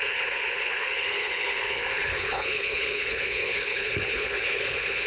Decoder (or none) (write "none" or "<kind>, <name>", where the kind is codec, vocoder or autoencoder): codec, HILCodec